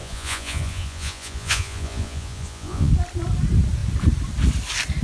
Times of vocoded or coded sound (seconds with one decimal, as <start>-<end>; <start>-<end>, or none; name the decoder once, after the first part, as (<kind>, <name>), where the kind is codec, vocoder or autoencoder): 0.0-2.9 (vocoder, Vocos)